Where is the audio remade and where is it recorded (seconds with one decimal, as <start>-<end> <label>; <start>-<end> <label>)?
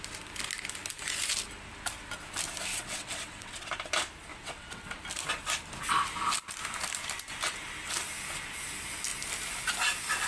0.0-2.7 recorded; 2.7-3.7 remade; 3.7-4.3 recorded; 4.3-4.9 remade; 4.9-10.3 recorded